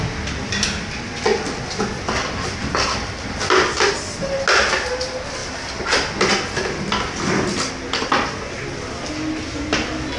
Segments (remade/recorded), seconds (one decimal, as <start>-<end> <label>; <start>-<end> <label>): 0.0-5.4 recorded; 5.4-7.7 remade; 7.7-10.2 recorded